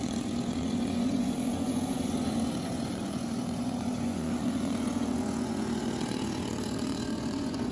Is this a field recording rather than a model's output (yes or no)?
no